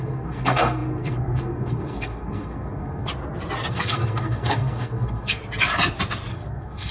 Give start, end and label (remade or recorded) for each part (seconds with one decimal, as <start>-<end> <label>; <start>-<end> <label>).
0.0-3.1 remade; 3.1-3.7 recorded; 3.7-5.4 remade; 5.4-6.3 recorded; 6.3-6.9 remade